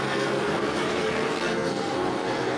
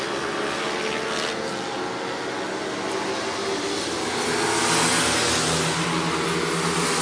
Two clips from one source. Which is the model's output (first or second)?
first